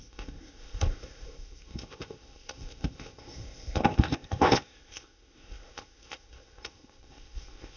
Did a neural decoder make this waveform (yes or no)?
yes